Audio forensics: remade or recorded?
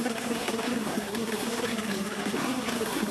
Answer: remade